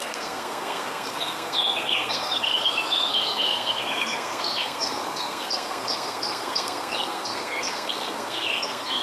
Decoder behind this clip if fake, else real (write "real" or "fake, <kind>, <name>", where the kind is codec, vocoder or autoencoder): fake, codec, SNAC